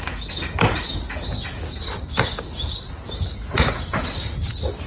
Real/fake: real